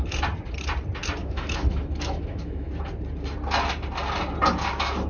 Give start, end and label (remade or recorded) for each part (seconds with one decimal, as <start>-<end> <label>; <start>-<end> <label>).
0.0-1.2 recorded; 1.2-2.7 remade; 2.7-5.1 recorded